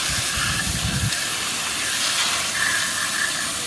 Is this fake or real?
real